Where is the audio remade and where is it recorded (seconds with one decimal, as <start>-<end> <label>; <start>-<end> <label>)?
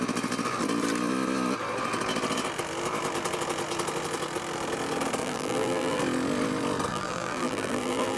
0.0-5.2 recorded; 5.2-6.0 remade; 6.0-6.9 recorded; 6.9-8.2 remade